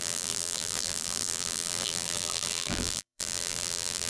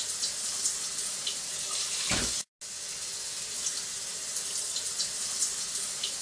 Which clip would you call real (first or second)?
second